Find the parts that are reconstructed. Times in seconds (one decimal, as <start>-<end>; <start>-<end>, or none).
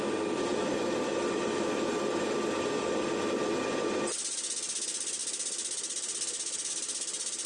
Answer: none